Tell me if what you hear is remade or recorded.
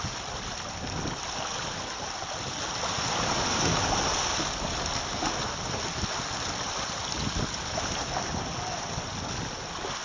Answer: recorded